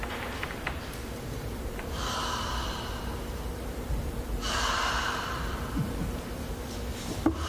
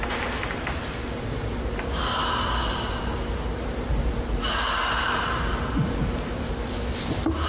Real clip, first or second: second